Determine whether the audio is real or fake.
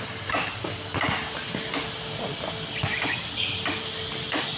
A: real